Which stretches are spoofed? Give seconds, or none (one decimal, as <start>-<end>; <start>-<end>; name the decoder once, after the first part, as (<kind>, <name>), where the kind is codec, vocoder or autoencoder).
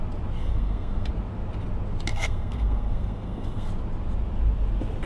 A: 0.4-1.1 (codec, SNAC); 2.1-3.7